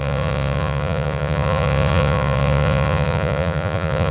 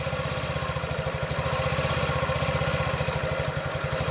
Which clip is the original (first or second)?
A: second